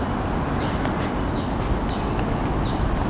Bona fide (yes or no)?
yes